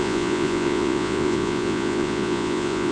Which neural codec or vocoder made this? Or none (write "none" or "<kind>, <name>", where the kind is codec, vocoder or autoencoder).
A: vocoder, Vocos